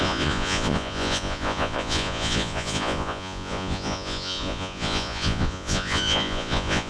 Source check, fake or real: fake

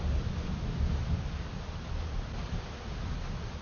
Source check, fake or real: fake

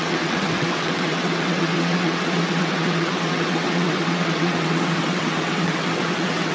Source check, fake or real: fake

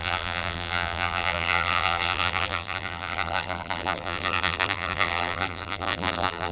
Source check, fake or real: fake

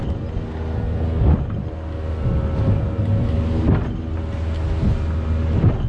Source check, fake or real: real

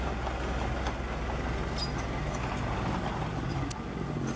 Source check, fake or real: real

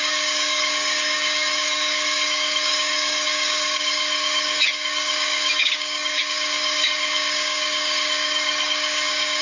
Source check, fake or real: fake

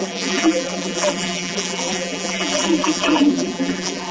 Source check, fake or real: fake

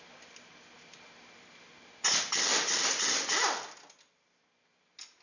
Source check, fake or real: real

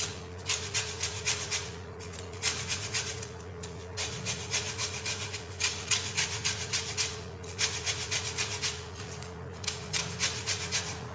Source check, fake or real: fake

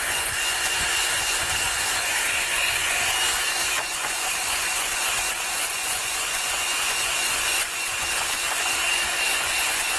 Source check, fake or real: fake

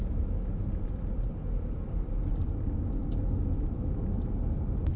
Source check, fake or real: real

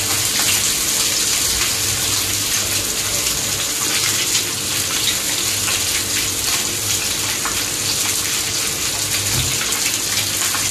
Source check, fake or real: real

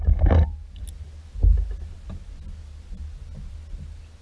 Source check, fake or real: real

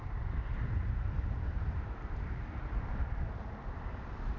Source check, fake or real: real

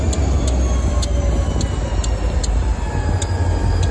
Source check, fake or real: real